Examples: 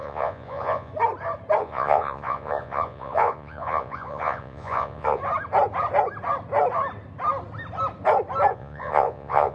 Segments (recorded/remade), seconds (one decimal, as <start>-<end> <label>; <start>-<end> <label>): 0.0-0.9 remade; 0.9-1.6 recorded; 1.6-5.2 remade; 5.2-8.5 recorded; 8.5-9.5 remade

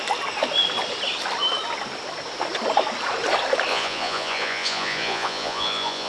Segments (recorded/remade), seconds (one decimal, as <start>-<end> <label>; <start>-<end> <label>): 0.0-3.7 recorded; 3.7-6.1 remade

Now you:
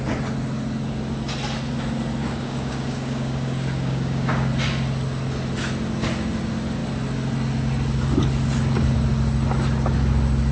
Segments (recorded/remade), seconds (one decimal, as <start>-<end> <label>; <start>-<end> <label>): 0.0-2.2 recorded; 2.2-4.5 remade; 4.5-10.5 recorded

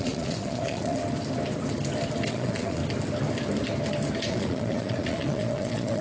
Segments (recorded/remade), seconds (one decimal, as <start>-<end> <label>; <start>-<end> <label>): 0.0-1.0 remade; 1.0-2.3 recorded; 2.3-2.8 remade; 2.8-4.3 recorded; 4.3-6.0 remade